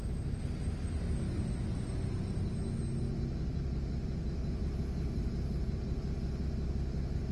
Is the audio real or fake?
real